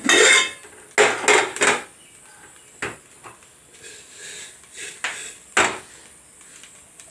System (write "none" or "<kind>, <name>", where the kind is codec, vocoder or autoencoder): none